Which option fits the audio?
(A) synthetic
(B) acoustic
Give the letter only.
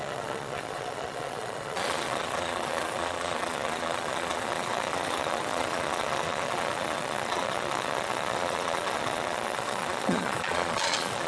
A